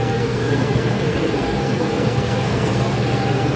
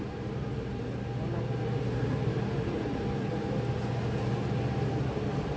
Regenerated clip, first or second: first